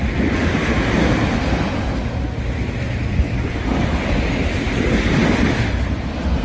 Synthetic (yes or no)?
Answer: no